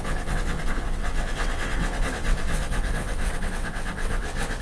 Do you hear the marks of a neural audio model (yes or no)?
yes